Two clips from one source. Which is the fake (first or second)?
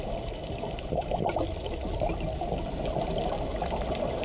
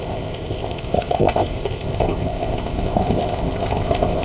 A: second